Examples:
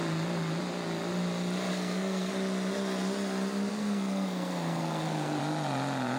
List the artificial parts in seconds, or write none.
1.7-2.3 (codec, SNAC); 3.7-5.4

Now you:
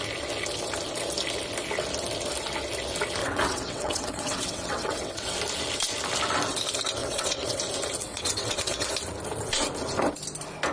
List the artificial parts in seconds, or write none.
3.2-5.4 (vocoder, WaveNeXt); 7.0-7.6; 8.0-8.9

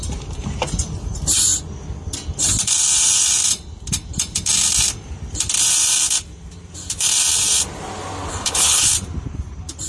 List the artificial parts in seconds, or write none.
8.3-8.9 (codec, HILCodec)

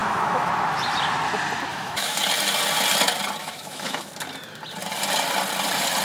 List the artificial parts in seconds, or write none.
0.0-0.5 (autoencoder, DAC-VAE); 1.7-2.2; 3.4-4.1

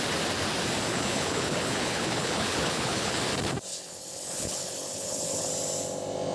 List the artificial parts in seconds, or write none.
0.9-3.2 (codec, HILCodec); 3.7-5.5

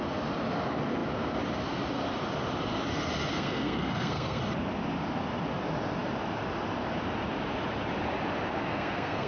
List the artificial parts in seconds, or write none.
3.3-4.4 (codec, SNAC); 8.7-9.3

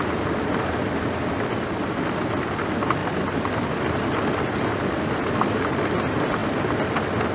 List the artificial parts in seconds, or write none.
none

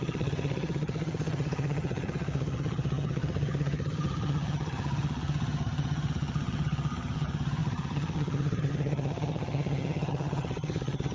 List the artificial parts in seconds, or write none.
0.0-11.1 (vocoder, HiFi-GAN)